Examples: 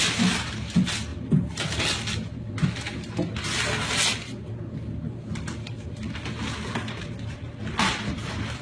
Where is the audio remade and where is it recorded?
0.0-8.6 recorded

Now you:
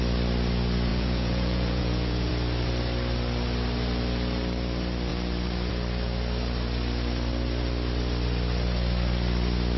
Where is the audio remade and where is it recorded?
0.0-0.9 recorded; 0.9-2.3 remade; 2.3-9.8 recorded

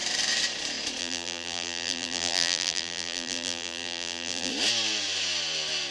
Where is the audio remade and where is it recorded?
0.0-1.0 recorded; 1.0-4.5 remade; 4.5-5.9 recorded

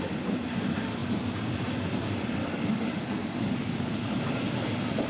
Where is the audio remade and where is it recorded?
0.0-2.4 recorded; 2.4-4.2 remade; 4.2-5.1 recorded